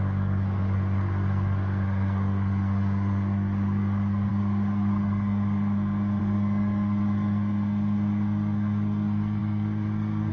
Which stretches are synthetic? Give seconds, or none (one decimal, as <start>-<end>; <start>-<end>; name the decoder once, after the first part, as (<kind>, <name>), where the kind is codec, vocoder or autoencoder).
0.0-10.3 (codec, SNAC)